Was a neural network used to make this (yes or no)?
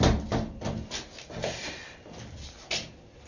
no